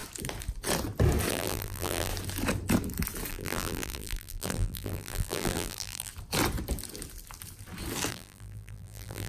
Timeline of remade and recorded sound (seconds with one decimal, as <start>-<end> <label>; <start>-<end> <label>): 0.0-1.3 recorded; 1.3-2.1 remade; 2.1-3.3 recorded; 3.3-6.1 remade; 6.1-8.1 recorded; 8.1-9.3 remade